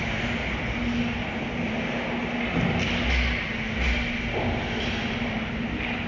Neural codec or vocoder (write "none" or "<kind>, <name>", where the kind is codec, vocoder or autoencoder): none